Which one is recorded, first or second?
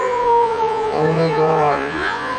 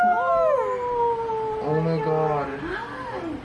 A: second